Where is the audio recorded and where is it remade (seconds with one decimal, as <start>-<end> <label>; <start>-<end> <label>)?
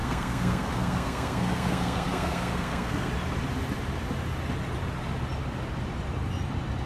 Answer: 0.0-3.1 remade; 3.1-6.9 recorded